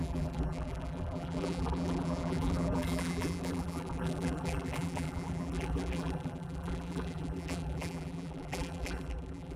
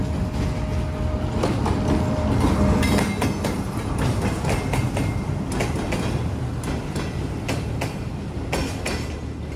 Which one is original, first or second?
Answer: second